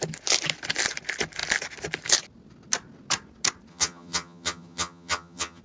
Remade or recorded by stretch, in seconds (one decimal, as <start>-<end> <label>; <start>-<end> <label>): 0.0-3.7 recorded; 3.7-5.6 remade